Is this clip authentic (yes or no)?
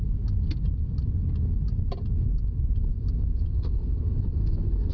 yes